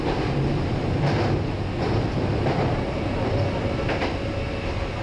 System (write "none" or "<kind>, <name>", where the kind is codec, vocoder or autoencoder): none